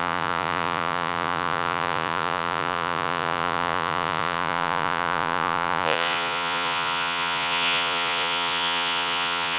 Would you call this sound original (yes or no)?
no